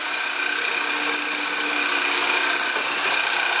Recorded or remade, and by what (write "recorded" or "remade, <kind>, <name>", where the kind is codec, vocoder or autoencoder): recorded